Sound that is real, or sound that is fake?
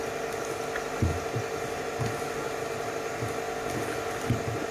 real